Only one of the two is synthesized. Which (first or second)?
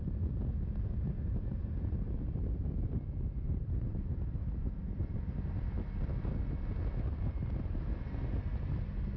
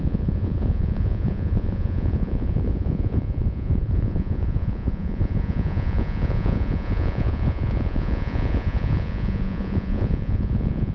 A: second